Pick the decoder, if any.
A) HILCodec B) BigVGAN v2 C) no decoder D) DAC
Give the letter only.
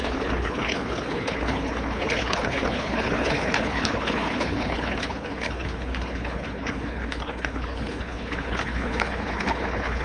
A